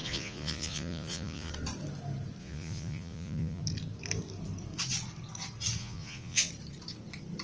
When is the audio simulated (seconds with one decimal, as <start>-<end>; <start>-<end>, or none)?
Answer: 0.0-1.5; 2.4-3.6; 5.8-6.5